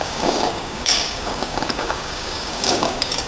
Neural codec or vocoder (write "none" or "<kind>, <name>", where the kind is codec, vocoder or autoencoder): codec, DAC